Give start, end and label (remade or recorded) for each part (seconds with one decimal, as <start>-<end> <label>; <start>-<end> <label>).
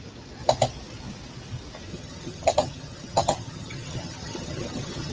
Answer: 0.0-1.9 recorded; 1.9-5.1 remade